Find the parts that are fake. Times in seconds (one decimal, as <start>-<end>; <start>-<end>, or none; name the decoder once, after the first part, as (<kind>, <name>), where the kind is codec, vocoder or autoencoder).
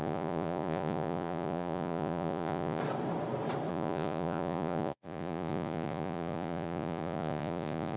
0.0-2.8 (vocoder, Vocos); 3.7-8.0